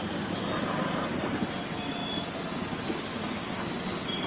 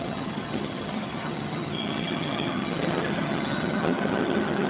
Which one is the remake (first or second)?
second